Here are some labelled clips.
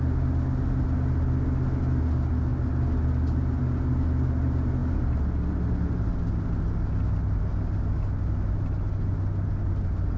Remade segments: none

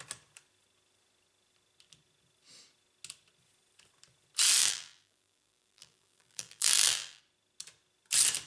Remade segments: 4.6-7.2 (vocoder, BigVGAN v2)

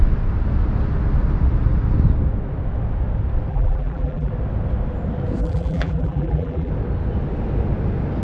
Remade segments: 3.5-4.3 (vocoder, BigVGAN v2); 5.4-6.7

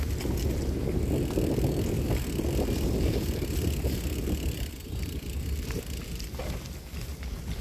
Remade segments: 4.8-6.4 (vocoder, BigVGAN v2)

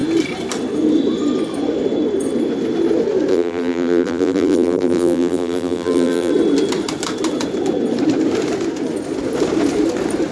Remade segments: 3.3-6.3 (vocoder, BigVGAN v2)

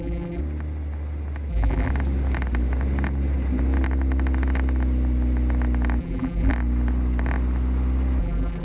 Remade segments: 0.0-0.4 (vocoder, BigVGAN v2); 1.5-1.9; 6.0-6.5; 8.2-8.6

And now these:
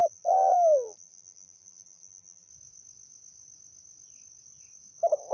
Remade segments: 0.0-2.5 (vocoder, BigVGAN v2)